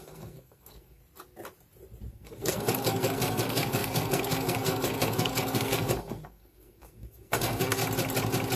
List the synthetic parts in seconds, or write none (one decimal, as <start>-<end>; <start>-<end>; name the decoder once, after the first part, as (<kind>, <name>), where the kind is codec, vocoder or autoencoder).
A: 0.0-1.0 (codec, SNAC); 2.1-7.8